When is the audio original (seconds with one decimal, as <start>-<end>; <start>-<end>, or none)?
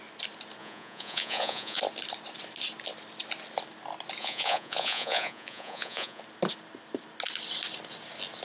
0.0-0.6; 1.8-4.2; 6.2-8.4